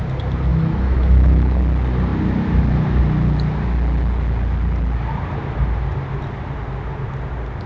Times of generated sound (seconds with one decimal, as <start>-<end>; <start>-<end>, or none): 0.5-1.6